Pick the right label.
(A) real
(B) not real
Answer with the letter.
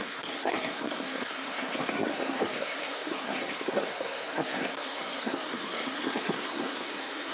B